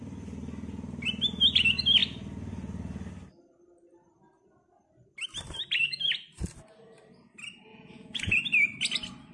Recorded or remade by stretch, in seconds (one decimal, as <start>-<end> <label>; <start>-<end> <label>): 0.0-7.7 recorded; 7.7-8.4 remade; 8.4-9.3 recorded

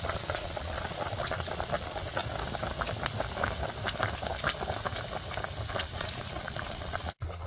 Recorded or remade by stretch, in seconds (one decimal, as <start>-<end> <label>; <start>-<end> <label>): 0.0-2.2 remade; 2.2-5.7 recorded; 5.7-7.5 remade

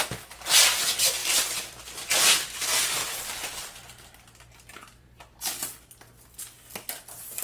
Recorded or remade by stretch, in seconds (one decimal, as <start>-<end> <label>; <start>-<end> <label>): 0.0-1.2 recorded; 1.2-5.6 remade; 5.6-7.4 recorded

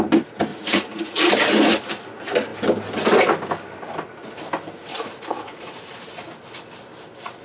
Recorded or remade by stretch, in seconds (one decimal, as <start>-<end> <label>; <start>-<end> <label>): 0.0-0.5 recorded; 0.5-1.3 remade; 1.3-4.9 recorded; 4.9-6.1 remade; 6.1-7.4 recorded

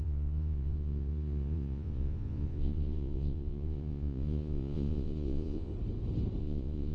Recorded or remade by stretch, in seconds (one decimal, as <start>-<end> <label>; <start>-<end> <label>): 0.0-5.7 remade; 5.7-6.4 recorded; 6.4-6.9 remade

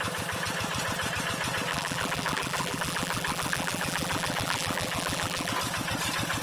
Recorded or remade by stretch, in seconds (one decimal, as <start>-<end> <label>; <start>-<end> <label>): 0.0-1.7 recorded; 1.7-5.5 remade; 5.5-6.4 recorded

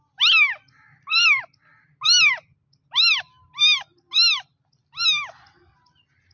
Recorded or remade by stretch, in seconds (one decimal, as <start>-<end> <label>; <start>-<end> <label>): 0.0-6.3 recorded

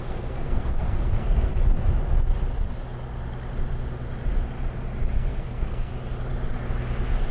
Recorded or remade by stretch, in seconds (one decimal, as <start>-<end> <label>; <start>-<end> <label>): 0.0-1.5 remade; 1.5-5.1 recorded; 5.1-5.9 remade; 5.9-7.3 recorded